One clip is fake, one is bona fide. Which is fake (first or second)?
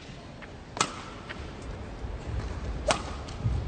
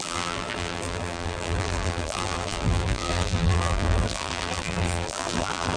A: second